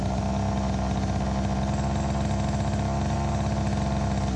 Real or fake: real